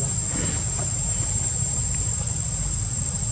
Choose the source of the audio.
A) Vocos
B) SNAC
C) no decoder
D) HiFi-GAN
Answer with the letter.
C